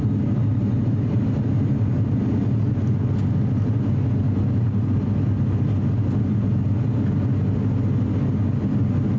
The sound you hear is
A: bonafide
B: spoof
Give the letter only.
A